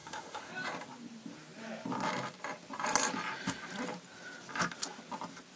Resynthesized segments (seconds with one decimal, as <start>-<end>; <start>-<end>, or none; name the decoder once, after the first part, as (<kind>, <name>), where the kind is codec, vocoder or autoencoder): 0.0-0.5 (autoencoder, DAC-VAE)